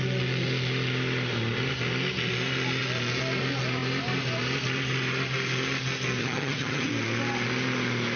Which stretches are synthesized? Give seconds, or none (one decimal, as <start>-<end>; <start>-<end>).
6.2-6.9